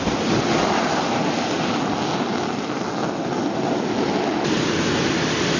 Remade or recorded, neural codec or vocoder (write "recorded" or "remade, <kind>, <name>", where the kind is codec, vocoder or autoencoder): recorded